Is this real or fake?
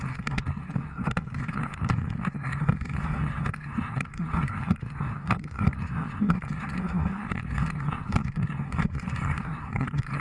fake